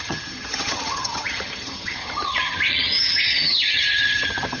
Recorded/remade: remade